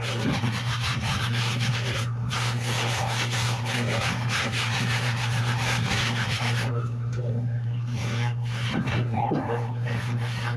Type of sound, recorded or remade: remade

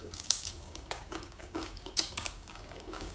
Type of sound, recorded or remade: remade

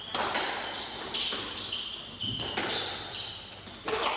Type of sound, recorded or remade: recorded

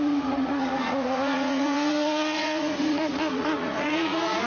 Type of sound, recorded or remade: remade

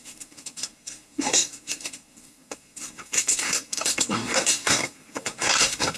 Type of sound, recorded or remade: remade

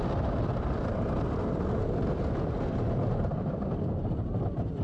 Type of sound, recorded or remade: recorded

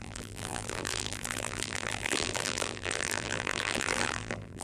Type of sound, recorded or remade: remade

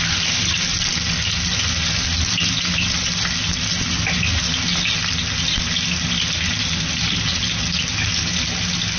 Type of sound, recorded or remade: recorded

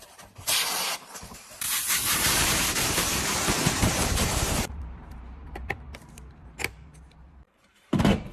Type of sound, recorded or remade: remade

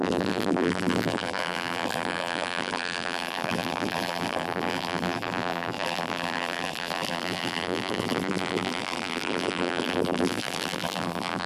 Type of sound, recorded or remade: remade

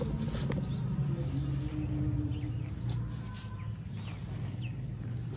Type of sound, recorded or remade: recorded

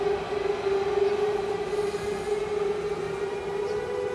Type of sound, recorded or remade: recorded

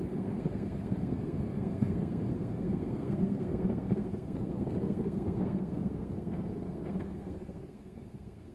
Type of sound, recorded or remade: remade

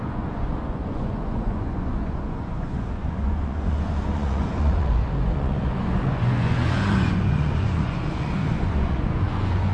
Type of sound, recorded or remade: remade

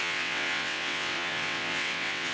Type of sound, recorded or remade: remade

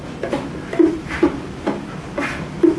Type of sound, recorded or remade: recorded